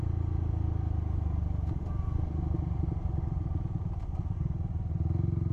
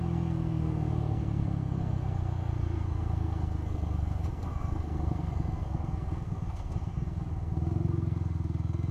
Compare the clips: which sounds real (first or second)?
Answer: first